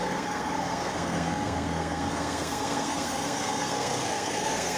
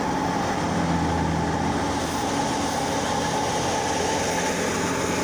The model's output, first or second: first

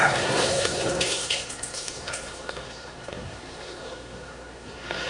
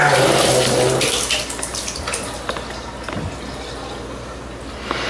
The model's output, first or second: first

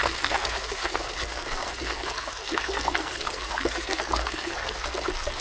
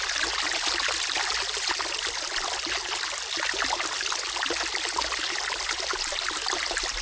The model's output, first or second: first